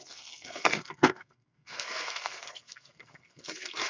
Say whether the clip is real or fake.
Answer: fake